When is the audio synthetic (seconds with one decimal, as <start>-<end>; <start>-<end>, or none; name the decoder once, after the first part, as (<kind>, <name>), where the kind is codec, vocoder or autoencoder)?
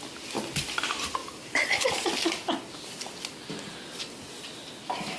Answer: none